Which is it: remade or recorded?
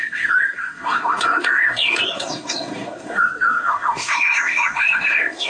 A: remade